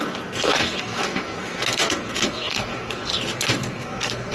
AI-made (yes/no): yes